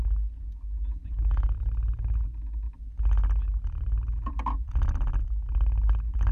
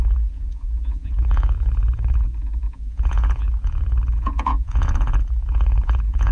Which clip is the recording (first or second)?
first